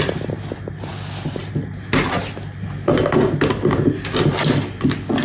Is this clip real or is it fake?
real